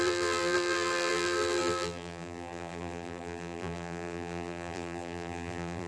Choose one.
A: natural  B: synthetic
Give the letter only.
B